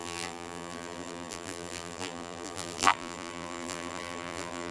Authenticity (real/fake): fake